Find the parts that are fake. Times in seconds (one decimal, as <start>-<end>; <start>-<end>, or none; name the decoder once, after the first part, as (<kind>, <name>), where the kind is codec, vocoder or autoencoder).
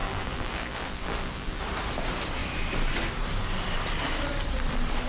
0.0-1.6 (vocoder, BigVGAN v2)